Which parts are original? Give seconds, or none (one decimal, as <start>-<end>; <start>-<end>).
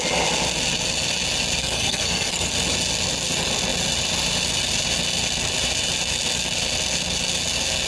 0.0-1.6; 2.5-7.9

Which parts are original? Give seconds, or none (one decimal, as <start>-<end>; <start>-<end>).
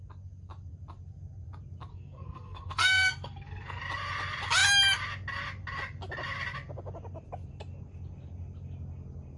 0.0-1.9; 3.8-9.4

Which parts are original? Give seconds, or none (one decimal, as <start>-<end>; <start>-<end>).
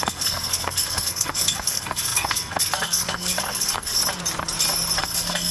4.0-5.0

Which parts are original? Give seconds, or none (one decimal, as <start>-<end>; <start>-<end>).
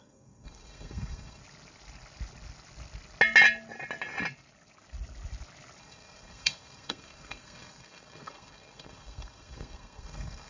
1.4-5.8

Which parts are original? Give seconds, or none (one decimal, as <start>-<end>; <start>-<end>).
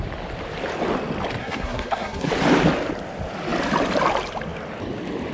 0.0-1.4; 2.3-5.3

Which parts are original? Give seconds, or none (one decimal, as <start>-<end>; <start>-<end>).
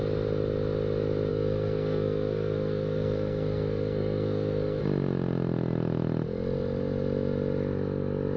0.0-1.3; 4.8-8.4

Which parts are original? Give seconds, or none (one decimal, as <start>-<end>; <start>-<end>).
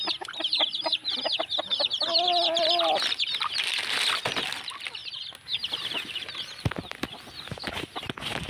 0.0-8.5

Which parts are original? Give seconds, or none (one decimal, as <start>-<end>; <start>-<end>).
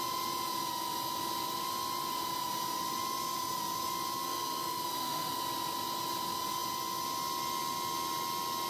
0.0-4.2; 5.3-8.7